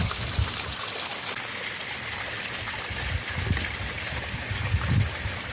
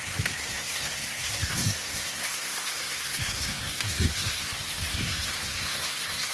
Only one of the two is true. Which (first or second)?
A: first